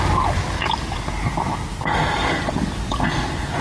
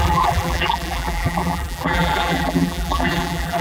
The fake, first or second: second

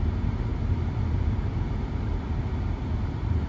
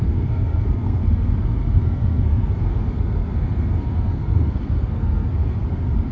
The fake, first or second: second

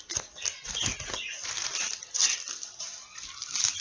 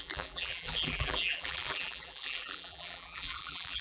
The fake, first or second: second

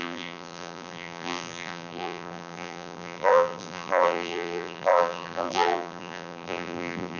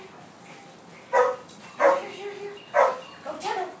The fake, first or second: first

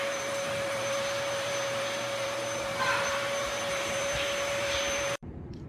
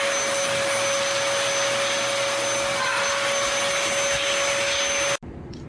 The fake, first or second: first